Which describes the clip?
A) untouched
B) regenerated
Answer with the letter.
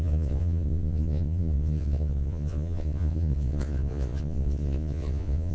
B